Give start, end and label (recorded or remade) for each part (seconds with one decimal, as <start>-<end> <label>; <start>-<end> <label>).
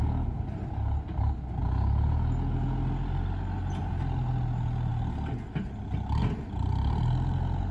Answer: 0.0-7.7 recorded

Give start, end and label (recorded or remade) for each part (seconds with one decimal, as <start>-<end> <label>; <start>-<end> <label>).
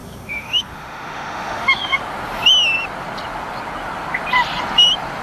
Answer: 0.0-2.0 remade; 2.0-5.2 recorded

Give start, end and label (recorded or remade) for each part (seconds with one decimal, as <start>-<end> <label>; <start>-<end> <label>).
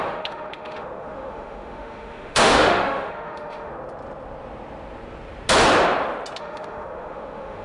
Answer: 0.0-3.7 remade; 3.7-6.4 recorded; 6.4-7.6 remade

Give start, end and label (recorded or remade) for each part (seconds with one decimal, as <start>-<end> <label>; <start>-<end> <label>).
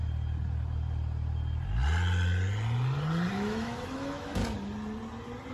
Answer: 0.0-3.3 recorded; 3.3-4.4 remade; 4.4-5.5 recorded